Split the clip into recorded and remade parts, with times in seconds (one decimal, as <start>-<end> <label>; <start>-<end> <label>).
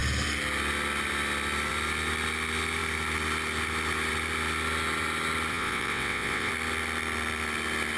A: 0.0-5.5 recorded; 5.5-6.5 remade; 6.5-8.0 recorded